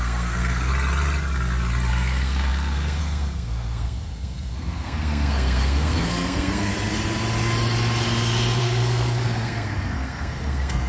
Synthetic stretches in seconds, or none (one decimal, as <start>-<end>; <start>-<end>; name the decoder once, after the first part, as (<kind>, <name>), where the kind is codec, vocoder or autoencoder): 0.0-0.7 (codec, SNAC); 1.9-6.7; 8.6-10.9